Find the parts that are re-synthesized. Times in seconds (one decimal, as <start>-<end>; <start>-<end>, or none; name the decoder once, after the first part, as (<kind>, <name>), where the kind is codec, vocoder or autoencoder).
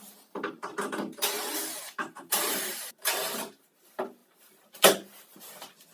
2.0-3.7 (vocoder, BigVGAN v2); 4.2-5.4